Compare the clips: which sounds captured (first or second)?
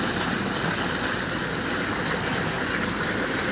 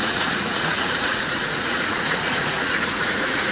first